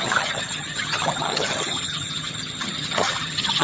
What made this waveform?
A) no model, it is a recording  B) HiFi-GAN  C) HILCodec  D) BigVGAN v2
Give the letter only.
B